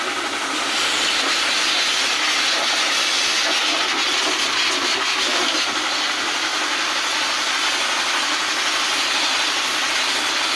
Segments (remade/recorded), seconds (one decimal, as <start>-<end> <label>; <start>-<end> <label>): 0.0-10.6 recorded